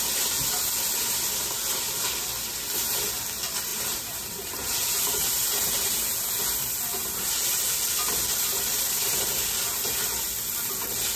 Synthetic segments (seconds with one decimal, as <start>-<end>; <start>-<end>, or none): 3.7-6.3